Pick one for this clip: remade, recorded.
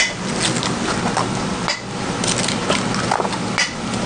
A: recorded